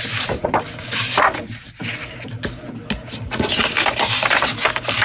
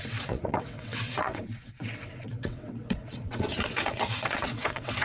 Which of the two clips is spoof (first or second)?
second